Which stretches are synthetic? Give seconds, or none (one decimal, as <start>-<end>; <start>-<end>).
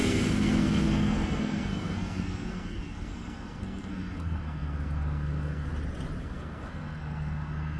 0.0-5.7; 6.2-7.8